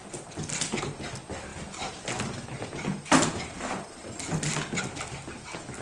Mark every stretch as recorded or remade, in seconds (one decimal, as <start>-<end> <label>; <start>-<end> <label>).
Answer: 0.0-5.8 recorded